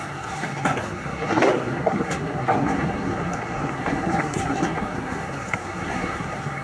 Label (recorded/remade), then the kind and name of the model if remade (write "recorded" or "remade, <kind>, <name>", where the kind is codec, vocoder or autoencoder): remade, codec, SNAC